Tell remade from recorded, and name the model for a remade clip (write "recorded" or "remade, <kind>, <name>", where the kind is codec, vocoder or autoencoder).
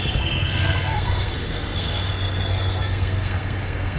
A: remade, codec, SNAC